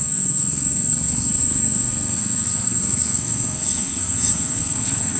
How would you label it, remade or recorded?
remade